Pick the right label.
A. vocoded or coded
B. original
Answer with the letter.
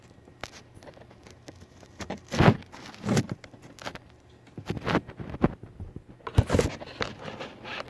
B